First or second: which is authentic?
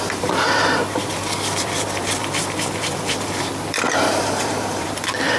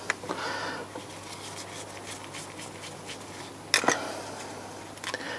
second